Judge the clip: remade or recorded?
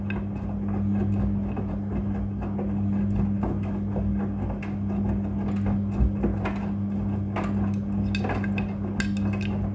recorded